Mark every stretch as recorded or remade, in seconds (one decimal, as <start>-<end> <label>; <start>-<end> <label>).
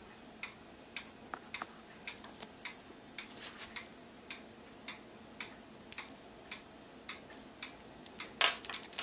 0.0-9.0 recorded